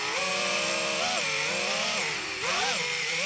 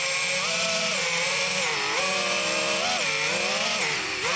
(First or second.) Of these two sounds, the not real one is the first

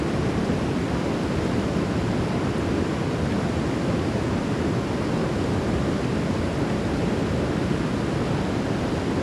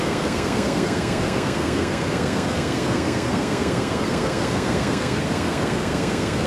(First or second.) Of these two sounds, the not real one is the second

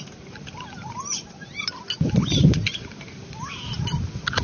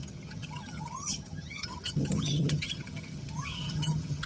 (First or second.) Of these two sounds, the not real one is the second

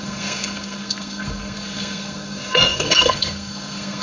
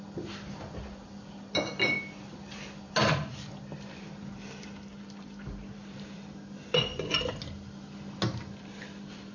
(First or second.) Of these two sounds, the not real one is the first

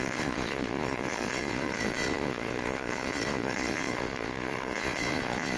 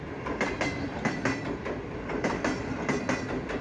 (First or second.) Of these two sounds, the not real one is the first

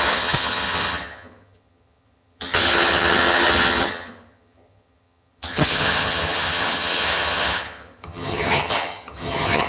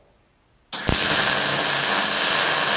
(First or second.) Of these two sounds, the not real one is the first